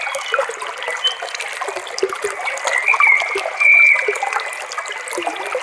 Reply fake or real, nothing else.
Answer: real